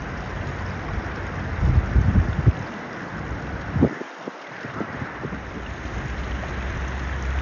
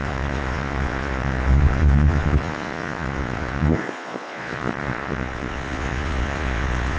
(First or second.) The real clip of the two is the first